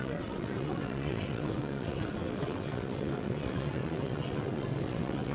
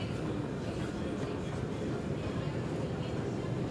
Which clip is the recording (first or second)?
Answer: second